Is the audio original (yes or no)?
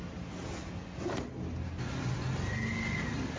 yes